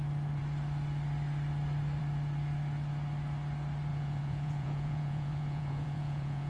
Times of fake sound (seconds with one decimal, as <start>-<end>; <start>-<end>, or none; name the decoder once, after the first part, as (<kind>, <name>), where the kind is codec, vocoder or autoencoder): 3.9-6.5 (vocoder, Vocos)